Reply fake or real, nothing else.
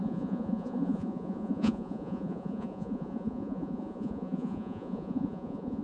fake